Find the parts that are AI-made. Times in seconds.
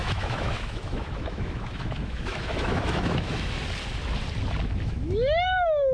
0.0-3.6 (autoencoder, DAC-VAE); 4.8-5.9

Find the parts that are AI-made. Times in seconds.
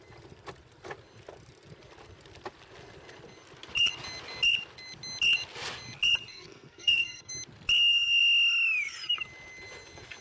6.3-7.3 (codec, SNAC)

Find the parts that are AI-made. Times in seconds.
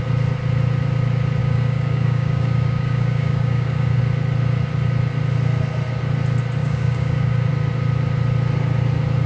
1.4-4.0 (codec, DAC); 6.6-7.5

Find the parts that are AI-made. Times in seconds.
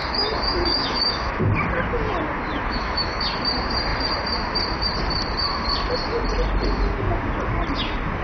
0.0-1.4 (autoencoder, DAC-VAE); 2.5-3.2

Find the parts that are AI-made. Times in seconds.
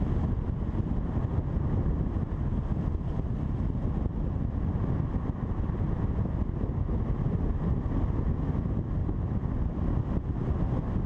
9.0-10.0 (vocoder, BigVGAN v2)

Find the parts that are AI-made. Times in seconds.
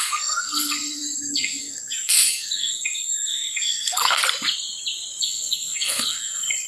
0.0-4.2 (codec, SNAC); 5.2-6.7